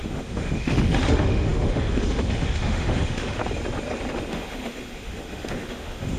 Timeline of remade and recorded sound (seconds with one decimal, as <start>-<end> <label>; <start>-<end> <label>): 0.0-3.4 remade; 3.4-4.3 recorded; 4.3-6.2 remade